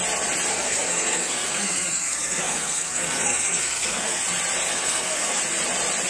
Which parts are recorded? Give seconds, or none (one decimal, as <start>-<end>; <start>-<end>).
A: 0.0-0.5; 4.2-4.7; 5.4-6.1